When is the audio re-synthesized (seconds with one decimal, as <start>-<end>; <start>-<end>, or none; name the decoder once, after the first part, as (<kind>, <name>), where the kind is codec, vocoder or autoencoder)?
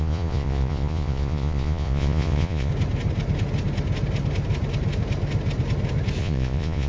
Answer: 0.0-2.7 (vocoder, Vocos); 6.2-6.9